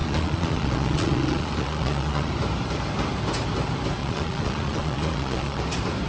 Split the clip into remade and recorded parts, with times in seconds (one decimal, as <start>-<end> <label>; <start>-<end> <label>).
0.0-2.3 remade; 2.3-4.0 recorded; 4.0-5.6 remade; 5.6-6.1 recorded